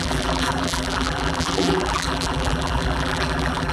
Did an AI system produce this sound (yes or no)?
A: yes